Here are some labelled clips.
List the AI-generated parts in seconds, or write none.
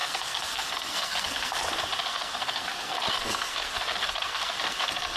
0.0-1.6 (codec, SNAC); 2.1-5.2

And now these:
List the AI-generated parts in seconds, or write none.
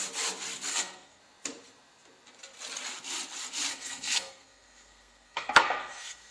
0.7-1.2 (codec, SNAC); 3.7-6.3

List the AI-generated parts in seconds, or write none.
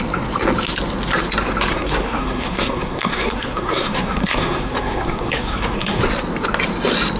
1.7-6.0 (codec, SNAC)